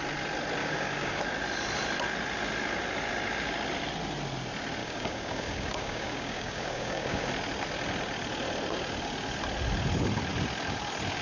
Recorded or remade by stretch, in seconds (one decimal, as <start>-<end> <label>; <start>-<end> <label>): 0.0-0.6 recorded; 0.6-1.2 remade; 1.2-4.8 recorded; 4.8-7.3 remade; 7.3-11.2 recorded